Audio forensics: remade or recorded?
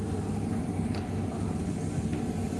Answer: recorded